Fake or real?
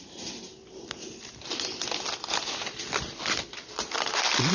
real